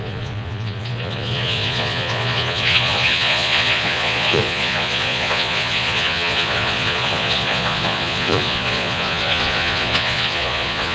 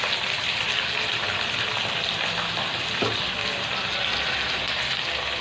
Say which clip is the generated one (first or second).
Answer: first